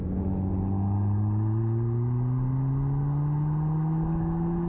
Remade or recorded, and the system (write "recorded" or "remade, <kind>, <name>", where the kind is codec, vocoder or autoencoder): recorded